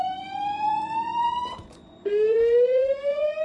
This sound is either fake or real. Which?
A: fake